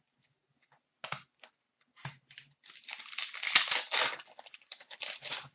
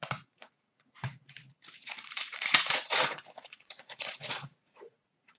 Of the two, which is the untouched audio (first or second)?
first